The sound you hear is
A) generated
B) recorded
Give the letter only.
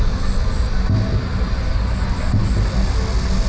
B